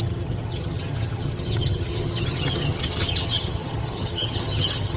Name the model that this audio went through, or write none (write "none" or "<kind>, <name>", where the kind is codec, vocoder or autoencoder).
vocoder, HiFi-GAN